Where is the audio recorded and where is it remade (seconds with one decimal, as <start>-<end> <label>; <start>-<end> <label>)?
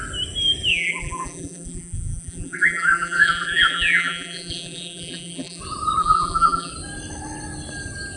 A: 0.0-0.7 recorded; 0.7-5.6 remade; 5.6-6.0 recorded; 6.0-6.7 remade; 6.7-8.2 recorded